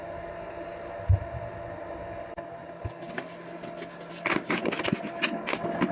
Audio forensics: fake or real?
real